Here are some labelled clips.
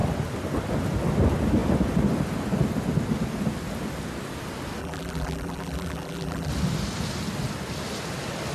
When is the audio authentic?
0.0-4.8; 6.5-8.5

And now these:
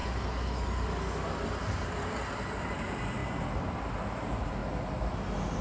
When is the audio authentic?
0.0-1.6; 4.6-5.6

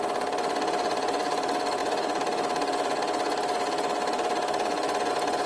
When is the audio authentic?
1.8-5.1

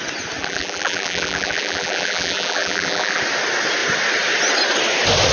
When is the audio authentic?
0.0-0.4; 3.2-5.3

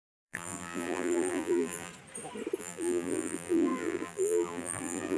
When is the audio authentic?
1.9-2.6

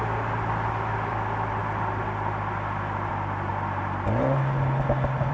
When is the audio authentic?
1.6-3.1; 3.5-5.3

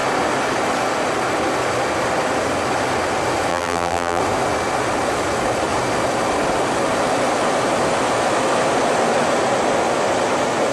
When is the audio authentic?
0.0-3.5; 4.2-10.7

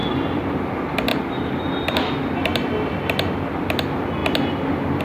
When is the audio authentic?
0.0-1.1; 2.1-5.0